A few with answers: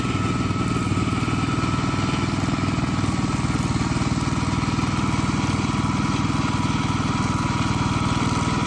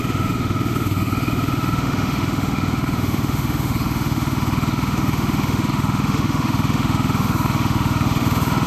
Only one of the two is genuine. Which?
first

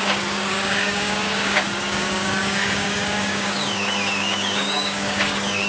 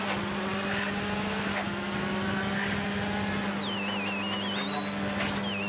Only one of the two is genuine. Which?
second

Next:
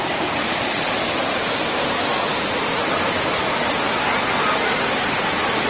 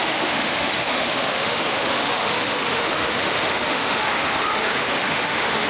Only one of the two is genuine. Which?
first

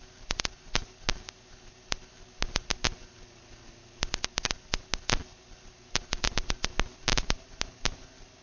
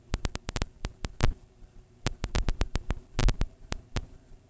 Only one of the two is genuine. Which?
first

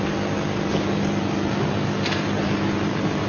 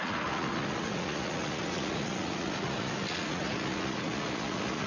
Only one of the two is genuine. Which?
first